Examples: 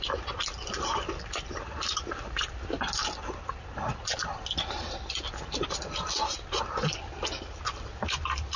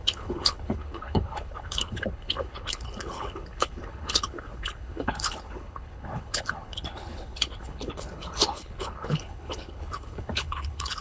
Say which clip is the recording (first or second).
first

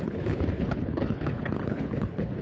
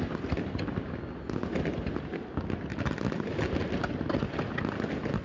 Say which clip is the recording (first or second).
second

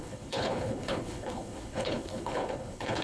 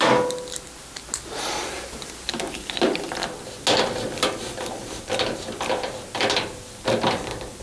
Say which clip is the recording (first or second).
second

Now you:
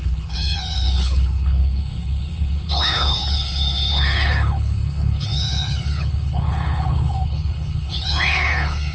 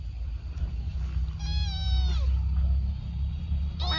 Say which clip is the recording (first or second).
second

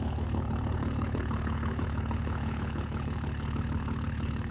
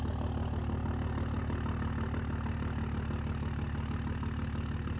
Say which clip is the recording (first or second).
second